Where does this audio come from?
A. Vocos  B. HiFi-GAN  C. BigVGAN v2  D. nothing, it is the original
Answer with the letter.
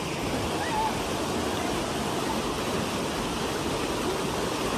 D